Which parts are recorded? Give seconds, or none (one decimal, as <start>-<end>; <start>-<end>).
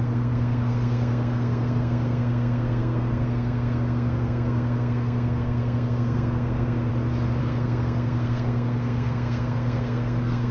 6.9-7.4